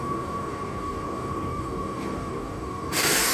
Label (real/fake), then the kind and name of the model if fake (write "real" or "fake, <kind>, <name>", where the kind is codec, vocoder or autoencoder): fake, codec, DAC